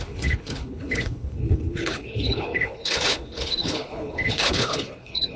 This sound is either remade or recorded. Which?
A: remade